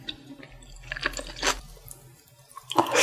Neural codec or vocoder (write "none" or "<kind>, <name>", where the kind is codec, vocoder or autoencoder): none